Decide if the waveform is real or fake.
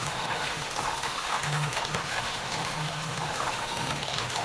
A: fake